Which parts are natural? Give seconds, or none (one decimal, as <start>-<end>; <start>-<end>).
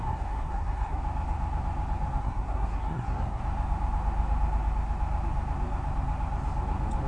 1.0-2.2; 3.4-7.1